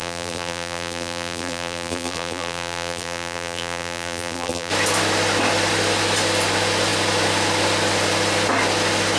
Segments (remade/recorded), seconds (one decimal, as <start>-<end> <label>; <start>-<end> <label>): 0.0-4.7 remade; 4.7-9.2 recorded